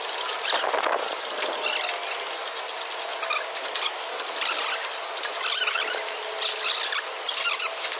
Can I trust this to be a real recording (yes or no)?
yes